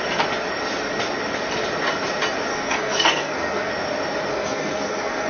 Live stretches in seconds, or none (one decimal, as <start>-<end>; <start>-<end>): 0.0-2.5; 3.7-4.3